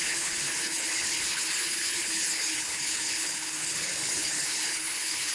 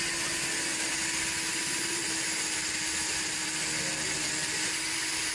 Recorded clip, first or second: second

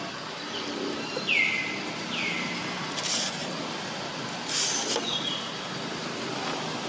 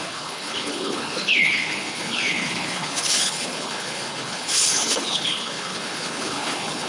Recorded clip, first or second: first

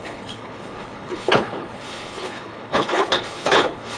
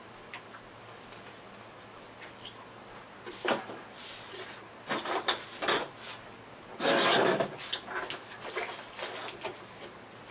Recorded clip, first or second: second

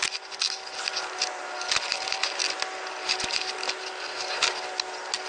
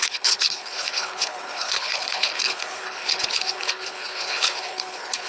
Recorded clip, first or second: first